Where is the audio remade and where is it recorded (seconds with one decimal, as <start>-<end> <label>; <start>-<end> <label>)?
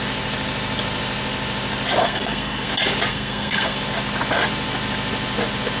0.0-2.0 recorded; 2.0-2.7 remade; 2.7-3.1 recorded; 3.1-3.8 remade; 3.8-5.8 recorded